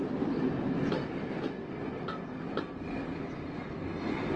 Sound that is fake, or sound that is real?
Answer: real